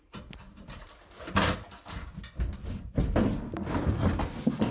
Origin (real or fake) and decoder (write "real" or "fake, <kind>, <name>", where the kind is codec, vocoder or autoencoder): real